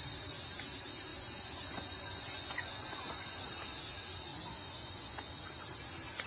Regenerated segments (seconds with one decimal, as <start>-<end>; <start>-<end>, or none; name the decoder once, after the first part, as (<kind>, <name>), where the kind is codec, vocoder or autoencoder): 1.1-3.4 (vocoder, Vocos); 4.3-5.3